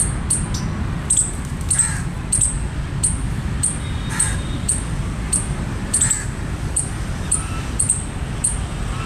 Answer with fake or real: real